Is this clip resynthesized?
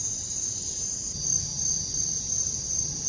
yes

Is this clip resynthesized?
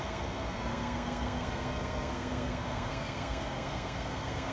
yes